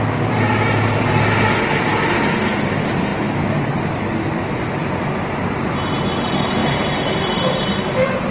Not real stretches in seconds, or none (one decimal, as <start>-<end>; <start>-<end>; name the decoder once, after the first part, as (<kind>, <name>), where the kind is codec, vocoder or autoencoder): 3.1-4.0 (vocoder, BigVGAN v2); 6.6-7.7